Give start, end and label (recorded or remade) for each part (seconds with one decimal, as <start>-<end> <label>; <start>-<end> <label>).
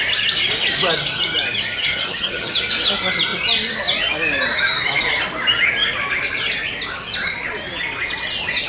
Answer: 0.0-1.8 recorded; 1.8-2.6 remade; 2.6-8.7 recorded